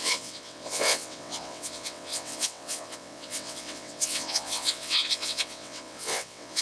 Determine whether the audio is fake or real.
fake